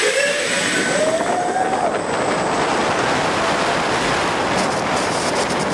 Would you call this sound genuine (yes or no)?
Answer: yes